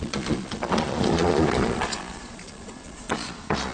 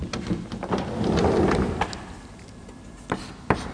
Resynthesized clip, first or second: first